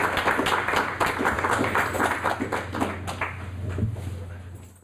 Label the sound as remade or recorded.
recorded